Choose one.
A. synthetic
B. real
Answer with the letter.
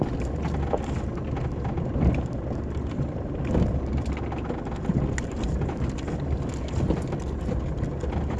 B